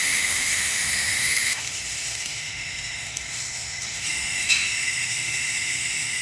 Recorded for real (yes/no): no